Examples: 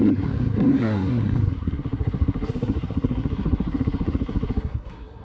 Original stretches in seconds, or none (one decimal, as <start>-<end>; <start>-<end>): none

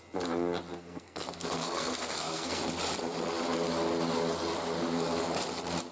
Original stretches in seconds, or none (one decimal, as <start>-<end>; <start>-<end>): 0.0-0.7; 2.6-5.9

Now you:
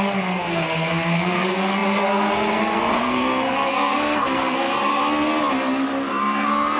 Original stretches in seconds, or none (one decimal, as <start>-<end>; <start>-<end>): 5.0-6.1

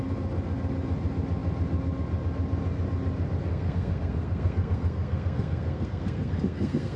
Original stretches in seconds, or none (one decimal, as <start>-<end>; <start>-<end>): 0.0-3.5

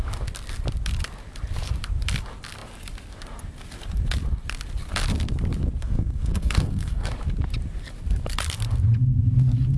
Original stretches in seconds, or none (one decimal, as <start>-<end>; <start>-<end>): 0.0-5.8; 7.1-9.8

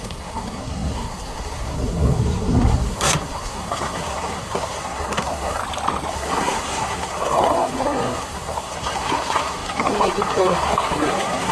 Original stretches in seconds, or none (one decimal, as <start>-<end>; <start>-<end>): 5.6-6.1

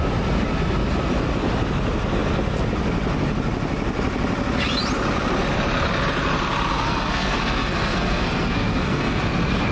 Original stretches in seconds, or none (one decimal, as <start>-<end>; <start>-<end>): 0.0-6.7; 9.2-9.7